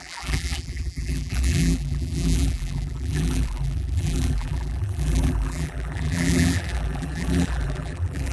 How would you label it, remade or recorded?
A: remade